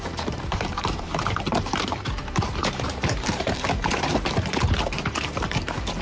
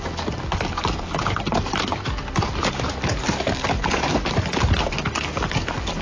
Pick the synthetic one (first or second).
first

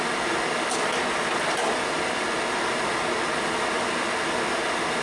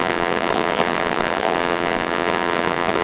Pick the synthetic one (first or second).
second